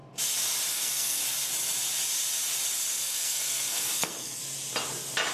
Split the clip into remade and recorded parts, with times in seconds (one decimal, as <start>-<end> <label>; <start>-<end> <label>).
0.0-0.7 recorded; 0.7-1.2 remade; 1.2-3.0 recorded; 3.0-4.4 remade; 4.4-5.3 recorded